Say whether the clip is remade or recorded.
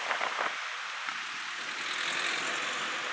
recorded